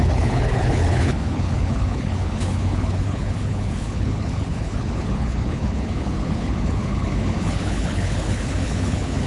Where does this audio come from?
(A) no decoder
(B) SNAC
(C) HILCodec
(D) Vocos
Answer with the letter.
C